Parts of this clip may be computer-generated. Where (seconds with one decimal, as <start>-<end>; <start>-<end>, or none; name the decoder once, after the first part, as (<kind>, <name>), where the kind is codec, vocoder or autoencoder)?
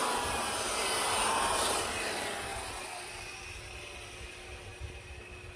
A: 0.8-1.8 (vocoder, BigVGAN v2)